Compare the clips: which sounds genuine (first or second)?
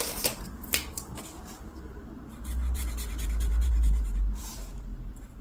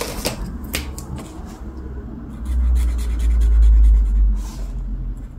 second